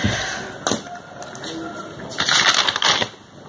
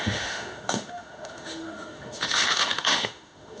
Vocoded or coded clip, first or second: second